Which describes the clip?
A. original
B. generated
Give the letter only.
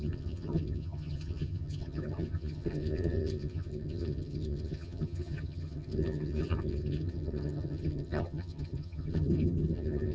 B